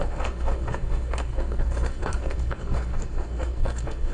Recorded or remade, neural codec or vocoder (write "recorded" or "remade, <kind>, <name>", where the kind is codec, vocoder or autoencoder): remade, codec, SNAC